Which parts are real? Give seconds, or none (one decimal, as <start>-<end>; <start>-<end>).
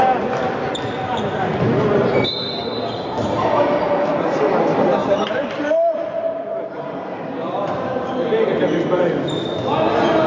0.0-5.0; 9.2-10.3